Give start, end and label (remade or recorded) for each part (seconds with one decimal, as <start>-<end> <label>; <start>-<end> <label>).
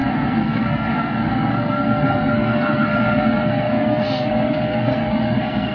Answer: 0.0-5.7 remade